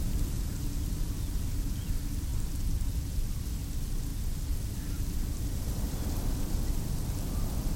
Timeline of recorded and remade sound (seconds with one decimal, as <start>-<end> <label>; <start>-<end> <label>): 0.0-2.3 recorded; 2.3-3.4 remade; 3.4-7.8 recorded